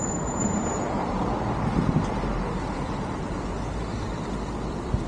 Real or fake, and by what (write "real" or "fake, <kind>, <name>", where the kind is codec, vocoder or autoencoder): real